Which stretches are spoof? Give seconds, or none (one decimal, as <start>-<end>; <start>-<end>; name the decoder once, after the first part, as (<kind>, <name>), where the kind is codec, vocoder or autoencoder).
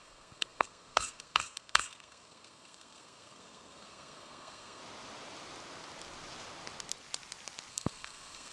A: 0.0-4.8 (codec, SNAC); 7.7-8.5